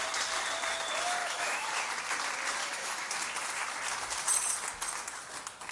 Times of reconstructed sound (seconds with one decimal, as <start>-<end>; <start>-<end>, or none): 1.2-1.7; 2.6-3.1